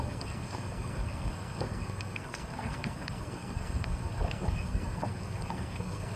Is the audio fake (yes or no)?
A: yes